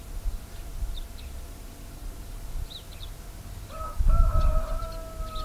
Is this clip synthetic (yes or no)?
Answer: no